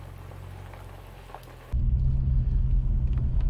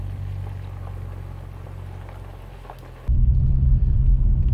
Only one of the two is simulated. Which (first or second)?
second